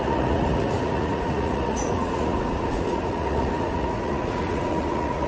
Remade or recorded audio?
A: remade